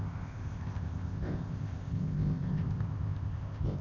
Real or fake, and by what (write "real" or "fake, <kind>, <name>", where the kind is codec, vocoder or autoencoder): fake, codec, ZipCodec